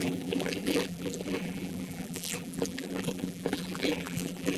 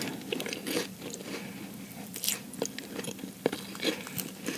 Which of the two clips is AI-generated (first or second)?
first